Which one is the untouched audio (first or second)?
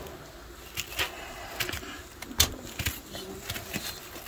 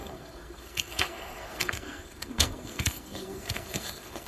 first